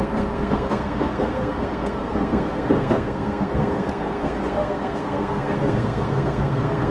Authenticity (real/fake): fake